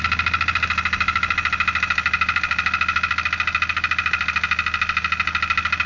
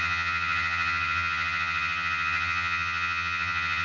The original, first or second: first